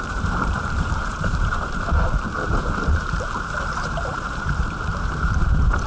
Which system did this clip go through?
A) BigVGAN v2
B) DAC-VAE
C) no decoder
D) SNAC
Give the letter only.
A